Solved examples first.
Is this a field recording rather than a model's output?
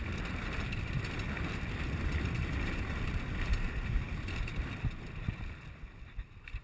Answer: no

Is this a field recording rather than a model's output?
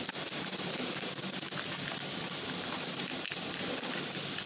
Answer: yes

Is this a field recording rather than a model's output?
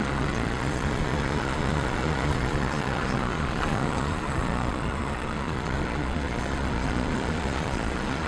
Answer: no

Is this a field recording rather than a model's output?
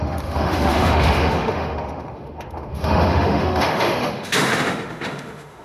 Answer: no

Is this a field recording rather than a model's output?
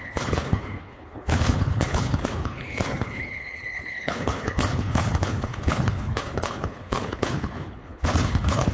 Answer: no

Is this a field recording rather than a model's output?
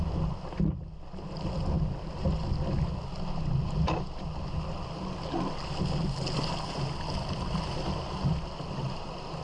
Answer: yes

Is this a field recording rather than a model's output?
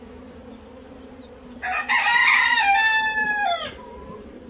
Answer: yes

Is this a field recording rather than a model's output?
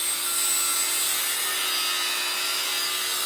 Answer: yes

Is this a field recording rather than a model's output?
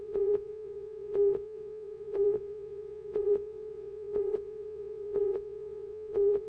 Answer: no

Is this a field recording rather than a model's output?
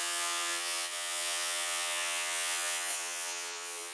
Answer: no